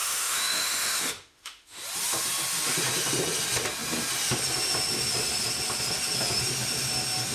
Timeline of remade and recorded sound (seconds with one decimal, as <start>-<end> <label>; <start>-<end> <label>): 0.0-1.8 remade; 1.8-7.3 recorded